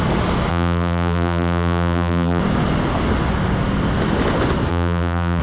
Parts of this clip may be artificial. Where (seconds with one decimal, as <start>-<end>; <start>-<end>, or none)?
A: 0.5-2.4; 4.7-5.4